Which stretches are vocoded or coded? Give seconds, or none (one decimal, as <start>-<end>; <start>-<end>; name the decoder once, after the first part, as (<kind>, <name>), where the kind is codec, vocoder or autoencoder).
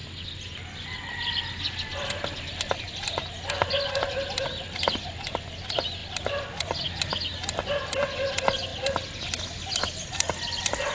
6.0-6.8 (vocoder, BigVGAN v2)